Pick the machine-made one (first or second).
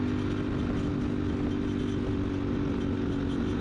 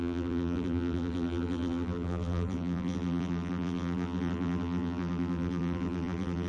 second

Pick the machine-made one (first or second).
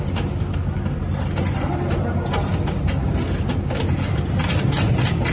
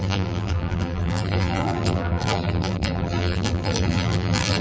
second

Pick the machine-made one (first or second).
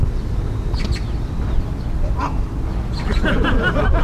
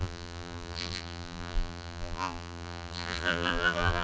second